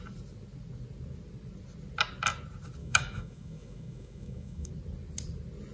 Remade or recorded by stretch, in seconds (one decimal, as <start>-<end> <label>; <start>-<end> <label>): 0.0-2.8 recorded; 2.8-4.7 remade; 4.7-5.7 recorded